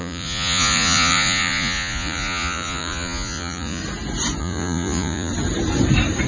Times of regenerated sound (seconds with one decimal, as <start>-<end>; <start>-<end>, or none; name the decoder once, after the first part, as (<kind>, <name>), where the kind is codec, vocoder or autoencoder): 0.0-3.8 (vocoder, Vocos); 4.4-5.3